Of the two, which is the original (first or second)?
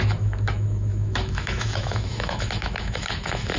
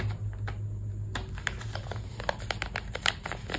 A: second